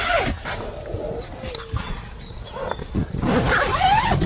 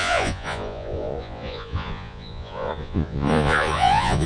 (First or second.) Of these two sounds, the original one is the first